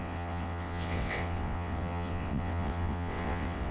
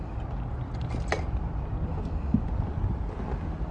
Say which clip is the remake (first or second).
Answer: first